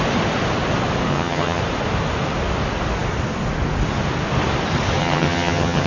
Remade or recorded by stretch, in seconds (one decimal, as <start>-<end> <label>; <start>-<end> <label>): 0.0-1.1 recorded; 1.1-1.6 remade; 1.6-5.0 recorded; 5.0-5.9 remade